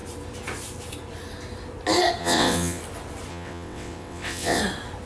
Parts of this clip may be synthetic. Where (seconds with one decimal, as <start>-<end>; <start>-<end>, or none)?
2.2-2.8; 3.3-4.6